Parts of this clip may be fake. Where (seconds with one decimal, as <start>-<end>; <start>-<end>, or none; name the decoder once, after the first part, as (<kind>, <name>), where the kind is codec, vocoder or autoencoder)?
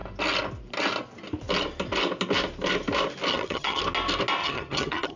3.3-3.8 (vocoder, HiFi-GAN); 4.4-5.2